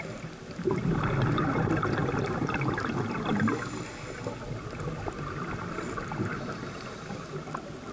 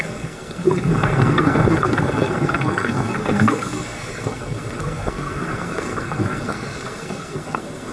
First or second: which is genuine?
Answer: first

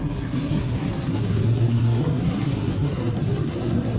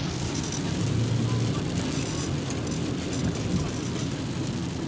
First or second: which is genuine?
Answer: second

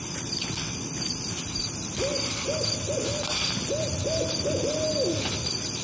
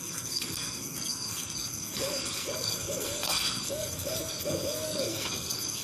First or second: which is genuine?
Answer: first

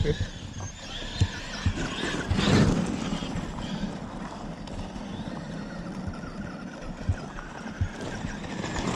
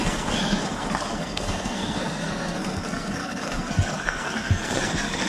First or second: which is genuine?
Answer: first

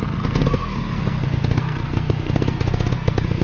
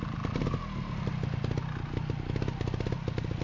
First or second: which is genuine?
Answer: second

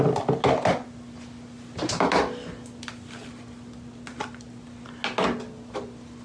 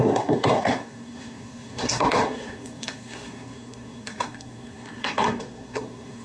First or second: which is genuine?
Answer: first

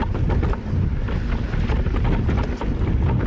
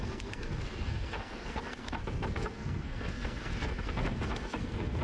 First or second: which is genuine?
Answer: first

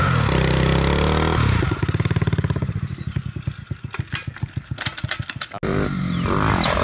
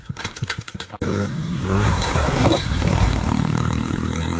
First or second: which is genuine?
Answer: first